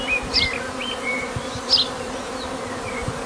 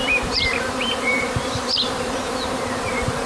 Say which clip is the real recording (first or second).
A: first